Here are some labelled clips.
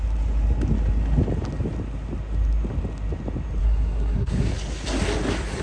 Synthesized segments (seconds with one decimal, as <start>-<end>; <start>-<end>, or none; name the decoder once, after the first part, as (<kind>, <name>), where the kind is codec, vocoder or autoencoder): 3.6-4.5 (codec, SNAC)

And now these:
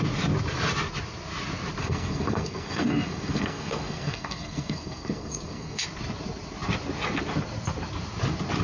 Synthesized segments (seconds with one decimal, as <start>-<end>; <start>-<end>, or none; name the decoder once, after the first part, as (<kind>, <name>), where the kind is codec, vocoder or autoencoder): 1.8-5.8 (codec, SNAC)

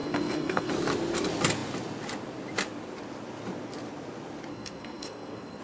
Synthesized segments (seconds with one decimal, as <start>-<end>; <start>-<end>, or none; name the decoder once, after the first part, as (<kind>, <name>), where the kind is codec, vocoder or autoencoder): 0.0-0.7 (codec, SNAC); 4.5-5.6

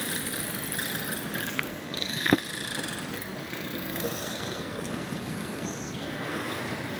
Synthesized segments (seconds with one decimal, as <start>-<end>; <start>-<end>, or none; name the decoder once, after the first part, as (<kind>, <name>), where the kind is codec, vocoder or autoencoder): 1.4-2.4 (codec, SNAC); 3.4-6.6

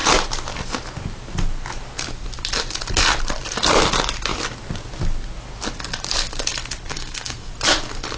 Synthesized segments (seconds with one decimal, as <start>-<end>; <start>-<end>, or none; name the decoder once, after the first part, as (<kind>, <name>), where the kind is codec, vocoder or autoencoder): 6.9-7.5 (codec, SNAC)

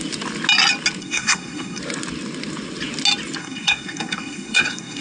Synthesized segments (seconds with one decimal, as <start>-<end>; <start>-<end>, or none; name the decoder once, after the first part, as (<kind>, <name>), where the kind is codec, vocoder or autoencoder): 1.0-1.8 (codec, SNAC); 3.4-5.0

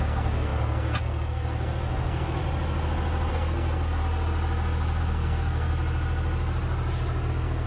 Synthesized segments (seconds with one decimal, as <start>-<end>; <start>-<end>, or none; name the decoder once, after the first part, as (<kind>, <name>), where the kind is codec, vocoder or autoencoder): 0.0-2.4 (codec, SNAC); 3.3-4.0; 5.0-5.7; 7.3-7.7

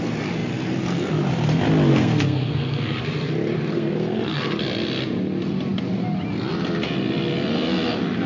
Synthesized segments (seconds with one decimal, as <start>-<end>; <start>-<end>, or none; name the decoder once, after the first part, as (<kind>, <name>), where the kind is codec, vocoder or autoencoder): 1.9-3.0 (codec, SNAC); 3.7-4.5